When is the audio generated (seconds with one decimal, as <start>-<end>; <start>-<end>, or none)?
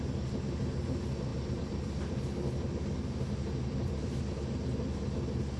none